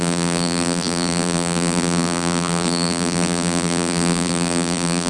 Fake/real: fake